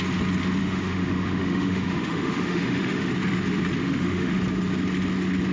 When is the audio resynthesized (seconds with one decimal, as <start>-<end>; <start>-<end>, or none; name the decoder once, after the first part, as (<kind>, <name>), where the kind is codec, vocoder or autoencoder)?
0.6-3.1 (autoencoder, DAC-VAE); 3.8-4.4

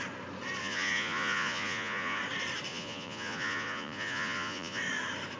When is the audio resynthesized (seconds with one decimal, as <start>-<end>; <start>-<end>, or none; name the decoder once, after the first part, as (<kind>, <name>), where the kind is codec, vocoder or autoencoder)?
0.6-2.2 (vocoder, Vocos); 2.7-4.8